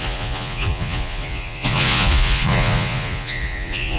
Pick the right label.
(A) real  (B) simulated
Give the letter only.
B